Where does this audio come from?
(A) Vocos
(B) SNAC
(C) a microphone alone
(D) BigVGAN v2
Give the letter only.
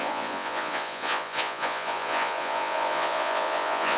A